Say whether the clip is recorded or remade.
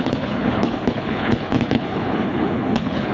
remade